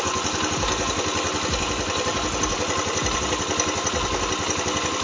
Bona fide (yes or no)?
yes